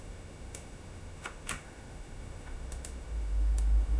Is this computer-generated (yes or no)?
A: yes